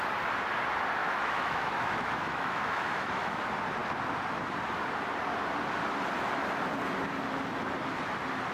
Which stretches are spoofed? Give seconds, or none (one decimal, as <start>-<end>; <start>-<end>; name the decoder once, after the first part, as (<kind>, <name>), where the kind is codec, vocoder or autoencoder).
1.0-3.4 (autoencoder, DAC-VAE)